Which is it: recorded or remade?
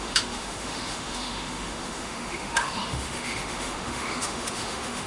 remade